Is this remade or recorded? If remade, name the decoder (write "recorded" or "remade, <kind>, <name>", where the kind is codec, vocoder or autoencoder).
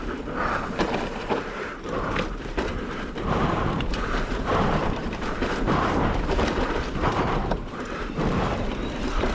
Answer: remade, vocoder, BigVGAN v2